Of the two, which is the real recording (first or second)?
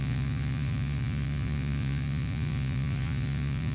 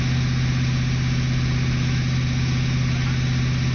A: second